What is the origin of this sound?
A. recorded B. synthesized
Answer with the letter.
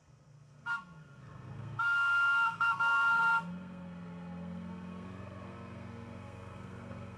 B